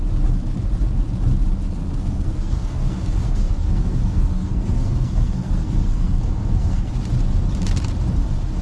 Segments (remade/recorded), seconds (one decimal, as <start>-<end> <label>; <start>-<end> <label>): 0.0-1.8 recorded; 1.8-6.9 remade; 6.9-8.6 recorded